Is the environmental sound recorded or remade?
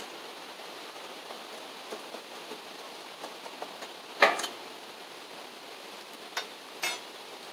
recorded